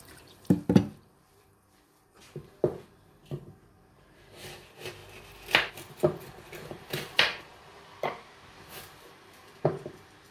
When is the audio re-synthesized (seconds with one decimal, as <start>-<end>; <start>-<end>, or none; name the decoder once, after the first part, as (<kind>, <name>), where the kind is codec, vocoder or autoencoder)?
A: 0.0-5.0 (vocoder, BigVGAN v2); 5.7-10.3